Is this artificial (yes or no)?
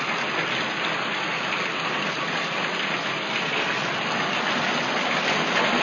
no